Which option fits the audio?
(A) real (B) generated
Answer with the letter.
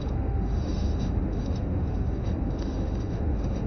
B